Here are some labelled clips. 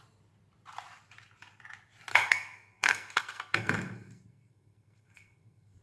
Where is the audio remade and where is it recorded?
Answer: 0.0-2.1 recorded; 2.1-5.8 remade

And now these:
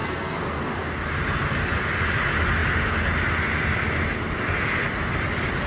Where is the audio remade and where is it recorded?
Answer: 0.0-0.6 remade; 0.6-5.7 recorded

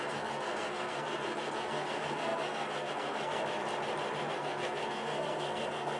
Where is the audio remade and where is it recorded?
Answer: 0.0-3.6 remade; 3.6-4.3 recorded; 4.3-6.0 remade

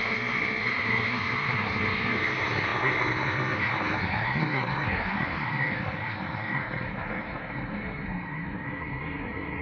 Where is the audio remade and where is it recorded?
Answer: 0.0-9.6 remade